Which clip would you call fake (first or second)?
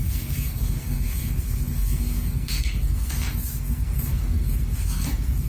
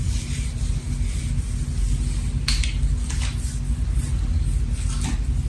first